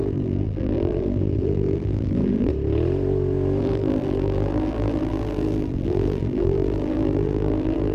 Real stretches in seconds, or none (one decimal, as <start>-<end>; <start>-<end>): 2.5-3.6